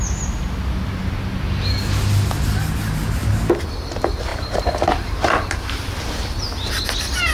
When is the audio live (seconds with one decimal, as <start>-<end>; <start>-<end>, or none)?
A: 0.0-3.2; 3.7-4.3; 6.7-7.3